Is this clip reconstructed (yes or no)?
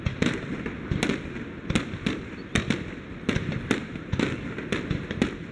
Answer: no